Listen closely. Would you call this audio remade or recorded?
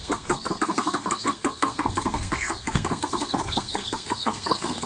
remade